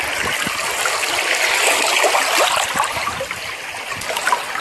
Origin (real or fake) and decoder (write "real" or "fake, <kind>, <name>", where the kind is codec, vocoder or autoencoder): real